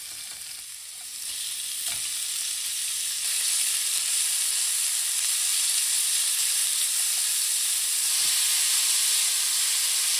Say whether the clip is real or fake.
real